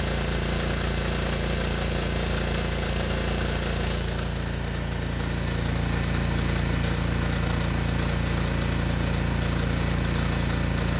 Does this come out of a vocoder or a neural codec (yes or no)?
no